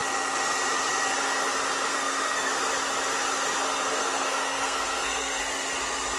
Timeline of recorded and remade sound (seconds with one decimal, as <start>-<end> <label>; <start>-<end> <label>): 0.0-1.9 recorded; 1.9-2.5 remade; 2.5-4.0 recorded; 4.0-5.4 remade; 5.4-6.2 recorded